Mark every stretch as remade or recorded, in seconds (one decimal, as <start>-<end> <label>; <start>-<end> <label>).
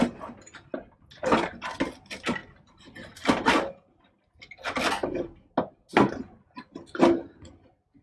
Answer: 0.0-8.0 recorded